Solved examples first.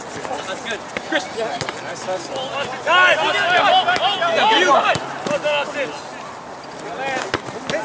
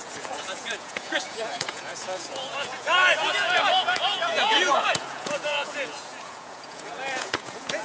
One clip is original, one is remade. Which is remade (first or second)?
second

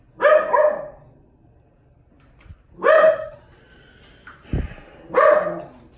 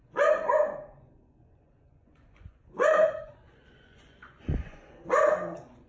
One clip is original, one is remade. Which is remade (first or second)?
second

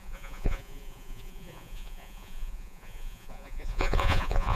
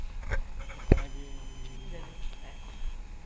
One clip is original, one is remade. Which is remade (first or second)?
first